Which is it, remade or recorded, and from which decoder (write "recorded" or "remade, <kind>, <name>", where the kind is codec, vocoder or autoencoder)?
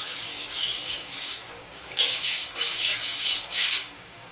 remade, codec, DAC